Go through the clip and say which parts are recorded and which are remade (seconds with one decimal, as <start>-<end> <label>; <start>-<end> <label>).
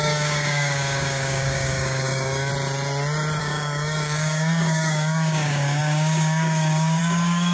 0.0-2.5 remade; 2.5-3.4 recorded; 3.4-7.5 remade